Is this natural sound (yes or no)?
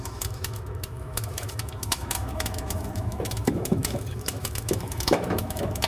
no